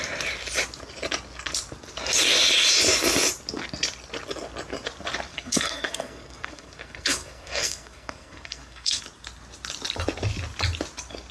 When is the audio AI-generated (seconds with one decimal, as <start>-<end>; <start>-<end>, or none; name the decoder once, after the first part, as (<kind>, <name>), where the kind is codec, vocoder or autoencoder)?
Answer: 5.3-9.0 (codec, SNAC)